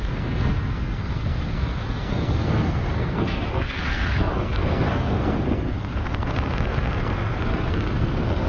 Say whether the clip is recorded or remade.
remade